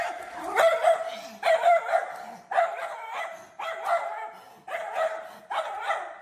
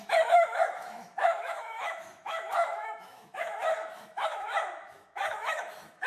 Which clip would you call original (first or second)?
first